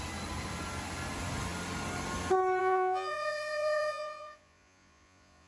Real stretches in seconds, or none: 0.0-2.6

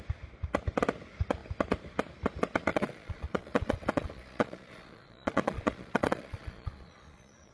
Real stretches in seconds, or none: 0.0-2.7

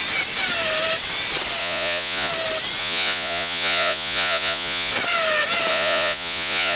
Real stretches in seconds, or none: 0.0-1.6; 2.3-2.8; 4.9-5.7

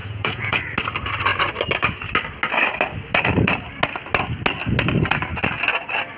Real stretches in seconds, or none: 0.6-6.2

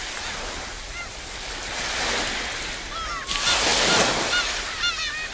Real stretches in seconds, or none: 0.0-5.3

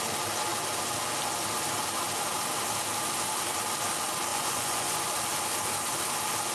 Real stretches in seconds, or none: 0.0-4.3; 5.1-6.5

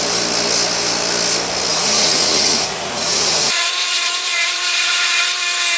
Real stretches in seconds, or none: 0.0-1.7; 5.2-5.8